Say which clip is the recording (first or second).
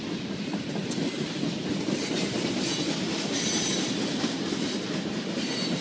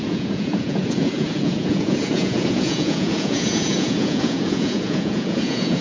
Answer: first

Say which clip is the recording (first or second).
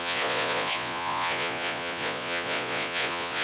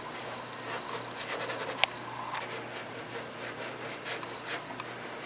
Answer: second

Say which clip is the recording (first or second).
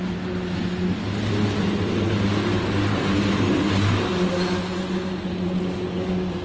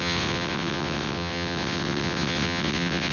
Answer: first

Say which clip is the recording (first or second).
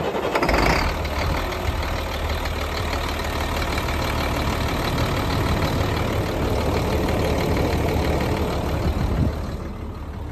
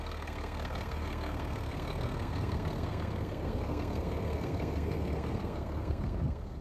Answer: first